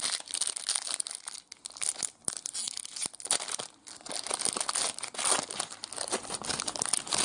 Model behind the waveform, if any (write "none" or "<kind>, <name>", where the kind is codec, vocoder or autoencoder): none